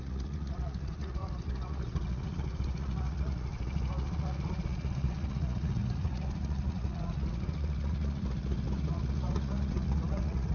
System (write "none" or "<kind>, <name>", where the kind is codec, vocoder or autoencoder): vocoder, Vocos